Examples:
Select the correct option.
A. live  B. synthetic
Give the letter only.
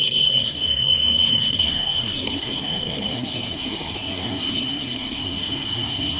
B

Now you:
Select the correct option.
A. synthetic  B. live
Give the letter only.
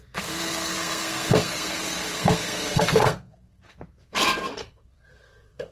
A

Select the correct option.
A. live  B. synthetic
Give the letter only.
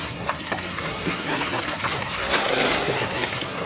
B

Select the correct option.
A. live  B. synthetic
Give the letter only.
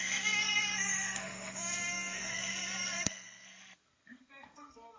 B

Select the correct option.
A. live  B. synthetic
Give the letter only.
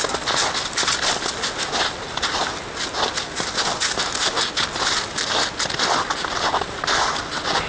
A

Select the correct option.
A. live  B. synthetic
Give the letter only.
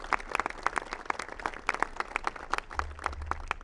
A